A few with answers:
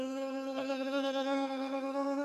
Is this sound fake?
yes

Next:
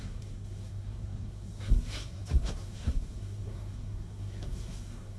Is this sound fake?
yes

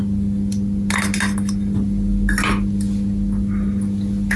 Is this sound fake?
no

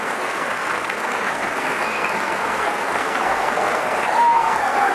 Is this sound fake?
yes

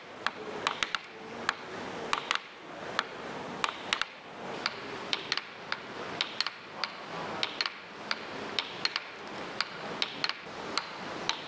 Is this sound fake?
no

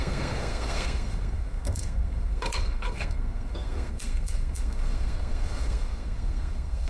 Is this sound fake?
yes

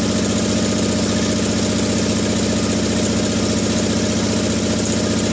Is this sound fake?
no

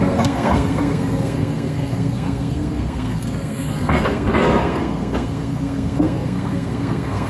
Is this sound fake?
yes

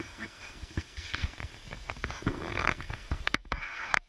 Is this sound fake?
yes